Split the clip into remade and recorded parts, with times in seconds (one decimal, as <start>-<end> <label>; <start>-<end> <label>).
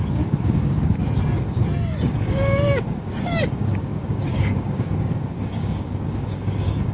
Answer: 0.0-6.9 remade